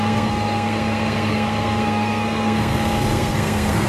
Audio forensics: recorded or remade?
remade